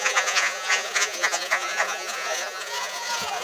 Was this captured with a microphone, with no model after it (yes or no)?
no